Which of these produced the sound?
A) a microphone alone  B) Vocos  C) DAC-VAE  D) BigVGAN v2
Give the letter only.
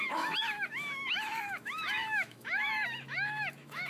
C